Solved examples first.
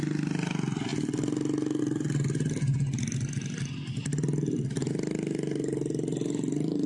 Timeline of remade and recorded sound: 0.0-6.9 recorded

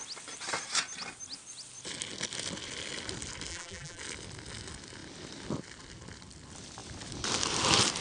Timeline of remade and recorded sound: 0.0-3.5 recorded; 3.5-4.0 remade; 4.0-8.0 recorded

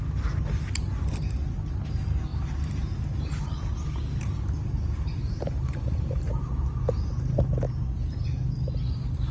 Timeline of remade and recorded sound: 0.0-5.2 recorded; 5.2-6.5 remade; 6.5-9.3 recorded

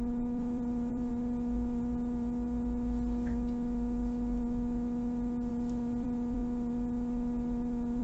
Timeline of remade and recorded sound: 0.0-1.1 remade; 1.1-5.5 recorded; 5.5-6.4 remade; 6.4-8.0 recorded

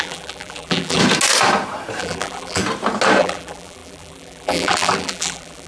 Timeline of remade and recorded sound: 0.0-1.0 remade; 1.0-2.0 recorded; 2.0-2.6 remade; 2.6-3.2 recorded; 3.2-5.7 remade

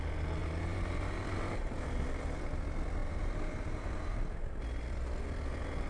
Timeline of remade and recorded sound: 0.0-0.4 recorded; 0.4-1.8 remade; 1.8-3.0 recorded; 3.0-4.2 remade; 4.2-5.9 recorded